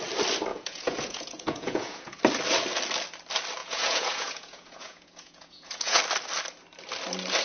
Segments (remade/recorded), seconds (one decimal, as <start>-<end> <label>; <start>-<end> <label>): 0.0-0.5 recorded; 0.5-2.2 remade; 2.2-3.6 recorded; 3.6-6.0 remade; 6.0-7.4 recorded